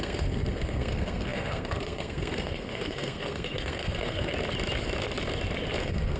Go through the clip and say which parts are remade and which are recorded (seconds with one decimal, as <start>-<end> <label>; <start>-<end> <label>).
0.0-4.3 remade; 4.3-5.8 recorded; 5.8-6.2 remade